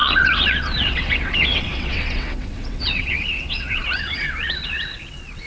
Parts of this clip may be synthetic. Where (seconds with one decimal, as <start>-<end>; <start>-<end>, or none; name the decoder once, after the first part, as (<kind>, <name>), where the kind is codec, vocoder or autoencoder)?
0.0-5.5 (vocoder, WaveNeXt)